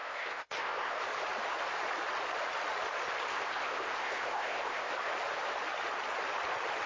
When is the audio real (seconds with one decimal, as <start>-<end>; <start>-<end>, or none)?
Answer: 1.0-3.3; 4.9-6.9